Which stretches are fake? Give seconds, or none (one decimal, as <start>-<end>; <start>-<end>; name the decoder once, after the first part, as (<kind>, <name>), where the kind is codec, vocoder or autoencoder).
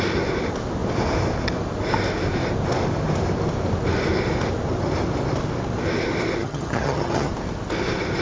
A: 6.4-7.3 (vocoder, HiFi-GAN)